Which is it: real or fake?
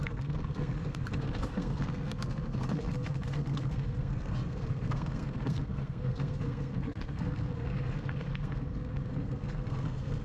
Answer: fake